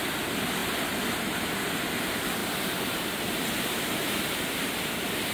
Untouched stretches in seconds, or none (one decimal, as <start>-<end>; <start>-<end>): 0.0-2.4; 4.7-5.3